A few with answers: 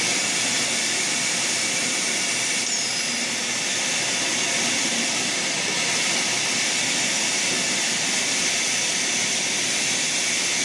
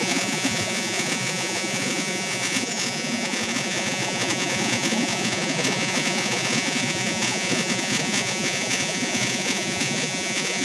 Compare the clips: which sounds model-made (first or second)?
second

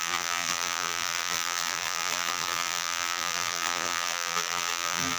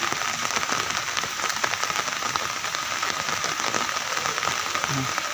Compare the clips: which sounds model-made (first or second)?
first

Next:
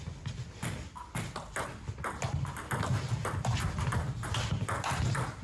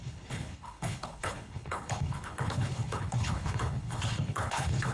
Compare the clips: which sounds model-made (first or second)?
second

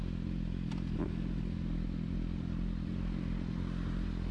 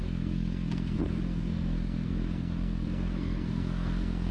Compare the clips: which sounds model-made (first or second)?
second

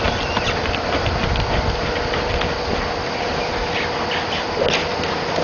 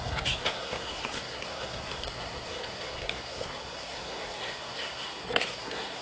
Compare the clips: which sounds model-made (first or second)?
second